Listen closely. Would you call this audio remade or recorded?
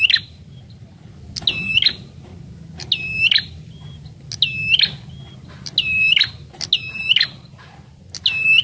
recorded